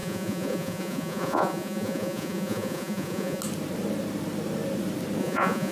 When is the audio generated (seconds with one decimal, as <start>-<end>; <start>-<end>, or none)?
0.0-3.4; 5.2-5.7